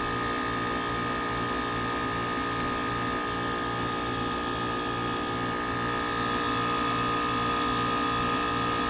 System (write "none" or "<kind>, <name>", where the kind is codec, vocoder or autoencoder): none